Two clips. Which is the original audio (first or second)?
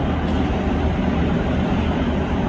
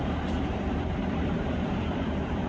first